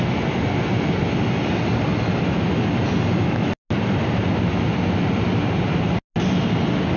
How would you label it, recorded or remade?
recorded